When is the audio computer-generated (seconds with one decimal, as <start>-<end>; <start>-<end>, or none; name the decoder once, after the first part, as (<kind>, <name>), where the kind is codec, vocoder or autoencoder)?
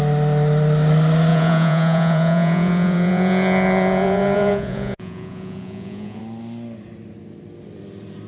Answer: 1.3-6.2 (vocoder, Vocos)